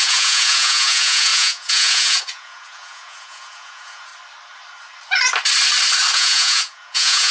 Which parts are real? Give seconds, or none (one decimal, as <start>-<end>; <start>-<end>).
4.1-6.1